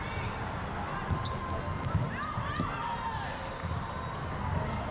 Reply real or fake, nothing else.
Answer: real